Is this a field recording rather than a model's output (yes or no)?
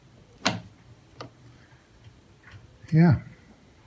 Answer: no